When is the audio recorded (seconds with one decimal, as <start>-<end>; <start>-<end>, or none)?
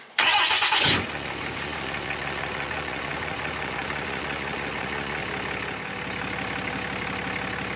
5.2-7.8